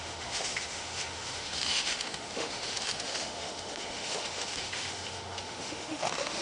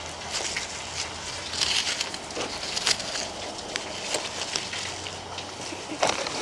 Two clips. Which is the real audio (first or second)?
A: second